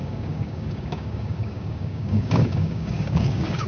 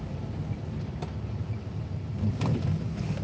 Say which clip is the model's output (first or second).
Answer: first